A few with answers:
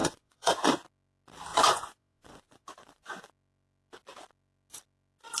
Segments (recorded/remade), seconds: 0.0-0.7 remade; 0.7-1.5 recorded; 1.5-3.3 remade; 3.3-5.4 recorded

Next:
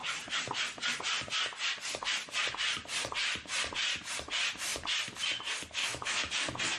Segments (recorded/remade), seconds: 0.0-5.8 recorded; 5.8-6.3 remade; 6.3-6.8 recorded

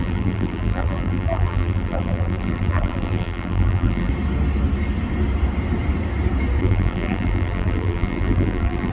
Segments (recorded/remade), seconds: 0.0-4.1 remade; 4.1-6.6 recorded; 6.6-8.9 remade

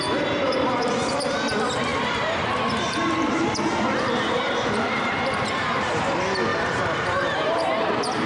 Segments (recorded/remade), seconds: 0.0-0.4 recorded; 0.4-0.9 remade; 0.9-1.9 recorded; 1.9-6.0 remade; 6.0-6.5 recorded; 6.5-8.3 remade